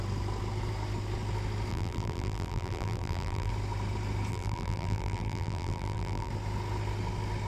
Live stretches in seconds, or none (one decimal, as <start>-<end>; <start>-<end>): 0.0-1.7; 3.5-4.3; 6.3-7.5